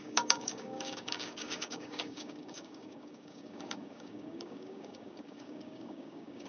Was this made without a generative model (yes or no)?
no